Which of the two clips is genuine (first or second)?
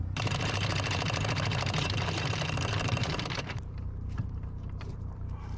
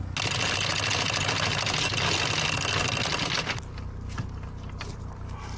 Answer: second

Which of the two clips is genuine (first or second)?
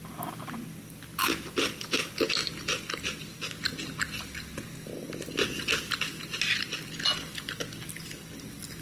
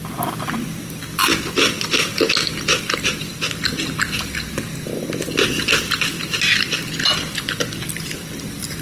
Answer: first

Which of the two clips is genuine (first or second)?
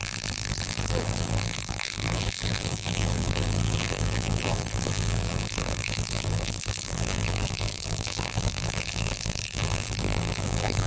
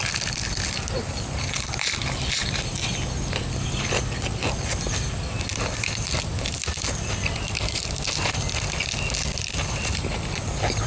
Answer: second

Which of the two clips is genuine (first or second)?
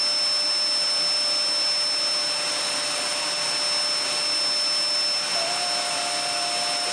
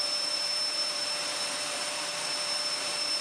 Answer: first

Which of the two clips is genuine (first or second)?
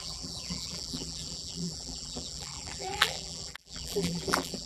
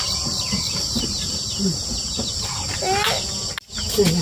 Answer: second